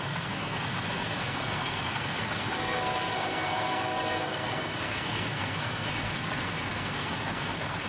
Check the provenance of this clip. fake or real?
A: fake